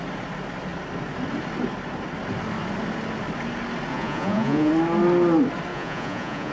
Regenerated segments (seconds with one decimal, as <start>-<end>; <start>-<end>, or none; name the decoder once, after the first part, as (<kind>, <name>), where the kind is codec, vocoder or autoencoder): 3.9-4.7 (vocoder, Vocos); 5.7-6.5